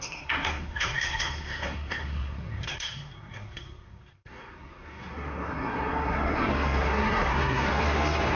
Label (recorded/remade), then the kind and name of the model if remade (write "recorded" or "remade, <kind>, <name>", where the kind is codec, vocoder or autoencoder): remade, codec, SNAC